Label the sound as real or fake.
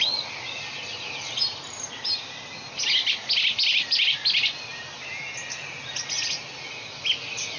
real